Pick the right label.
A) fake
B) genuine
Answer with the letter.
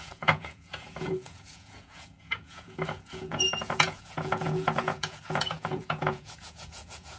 A